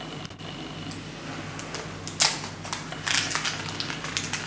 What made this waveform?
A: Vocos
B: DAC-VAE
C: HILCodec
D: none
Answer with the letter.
D